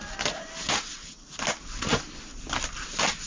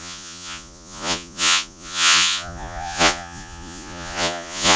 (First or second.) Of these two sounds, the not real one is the second